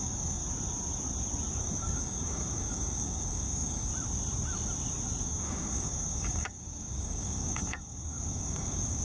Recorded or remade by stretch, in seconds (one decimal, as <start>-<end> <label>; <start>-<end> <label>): 0.0-0.4 remade; 0.4-1.6 recorded; 1.6-3.9 remade; 3.9-5.2 recorded; 5.2-9.0 remade